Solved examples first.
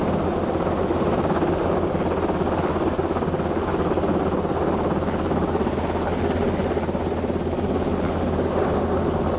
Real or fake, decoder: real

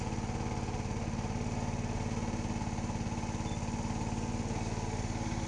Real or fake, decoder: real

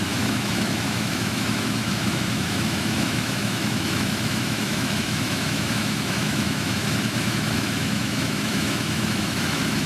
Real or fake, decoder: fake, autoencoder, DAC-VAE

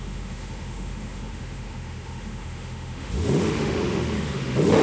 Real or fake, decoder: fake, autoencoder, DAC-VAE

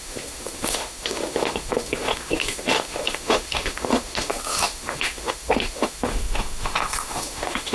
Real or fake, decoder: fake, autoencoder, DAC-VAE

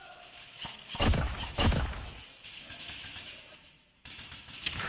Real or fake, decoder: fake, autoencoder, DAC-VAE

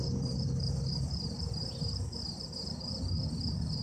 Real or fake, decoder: real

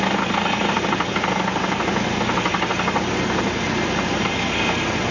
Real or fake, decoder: real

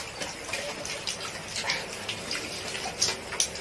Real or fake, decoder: real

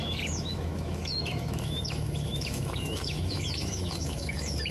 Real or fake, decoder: fake, autoencoder, DAC-VAE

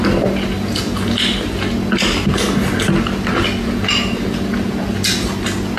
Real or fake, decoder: real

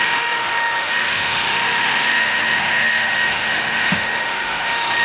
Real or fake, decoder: fake, autoencoder, DAC-VAE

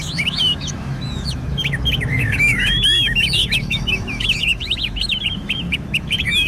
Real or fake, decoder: fake, autoencoder, DAC-VAE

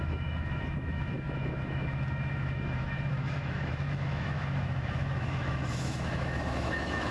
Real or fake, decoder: fake, autoencoder, DAC-VAE